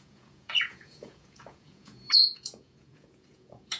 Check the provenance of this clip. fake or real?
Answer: fake